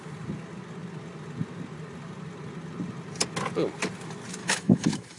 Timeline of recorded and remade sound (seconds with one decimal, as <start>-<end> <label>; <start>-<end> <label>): 0.0-4.4 recorded; 4.4-5.2 remade